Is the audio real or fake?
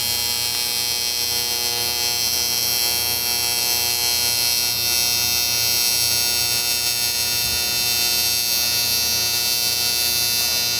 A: real